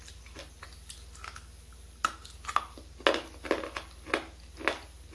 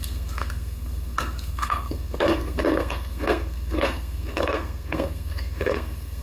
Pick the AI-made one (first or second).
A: second